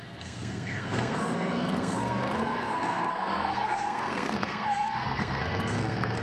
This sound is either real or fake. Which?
fake